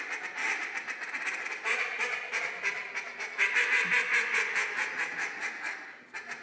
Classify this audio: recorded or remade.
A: recorded